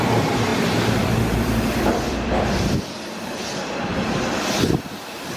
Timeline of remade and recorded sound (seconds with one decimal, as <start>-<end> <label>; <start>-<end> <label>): 0.0-3.9 remade; 3.9-5.4 recorded